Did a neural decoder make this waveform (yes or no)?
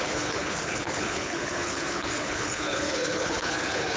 yes